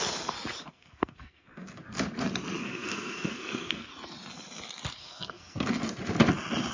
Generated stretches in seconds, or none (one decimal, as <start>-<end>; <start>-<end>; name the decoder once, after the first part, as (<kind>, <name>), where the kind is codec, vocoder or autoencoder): 0.7-1.8 (codec, SNAC); 2.6-3.9; 5.0-5.7